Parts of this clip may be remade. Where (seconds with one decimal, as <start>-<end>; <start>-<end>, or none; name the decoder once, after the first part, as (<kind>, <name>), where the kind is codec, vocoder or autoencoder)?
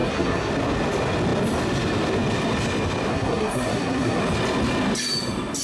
0.0-0.5 (codec, SNAC); 3.1-4.2